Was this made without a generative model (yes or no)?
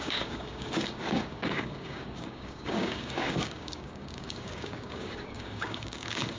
no